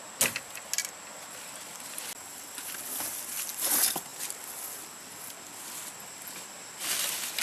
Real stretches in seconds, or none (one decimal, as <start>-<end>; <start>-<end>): 0.0-7.4